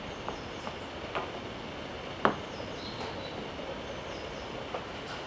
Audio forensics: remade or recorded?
recorded